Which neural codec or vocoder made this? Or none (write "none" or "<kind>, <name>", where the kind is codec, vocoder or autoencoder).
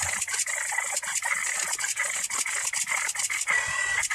none